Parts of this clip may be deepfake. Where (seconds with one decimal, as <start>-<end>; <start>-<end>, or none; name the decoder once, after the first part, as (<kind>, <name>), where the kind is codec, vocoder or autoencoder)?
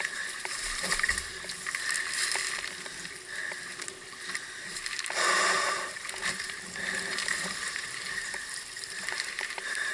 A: 0.0-1.3 (vocoder, BigVGAN v2); 5.7-9.9